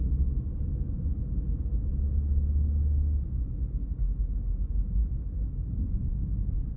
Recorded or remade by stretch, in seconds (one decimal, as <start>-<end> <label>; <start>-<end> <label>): 0.0-6.8 recorded